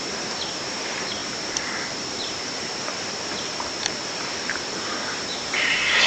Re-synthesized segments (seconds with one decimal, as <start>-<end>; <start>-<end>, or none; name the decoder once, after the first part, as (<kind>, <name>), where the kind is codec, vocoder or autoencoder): 1.2-4.9 (vocoder, BigVGAN v2)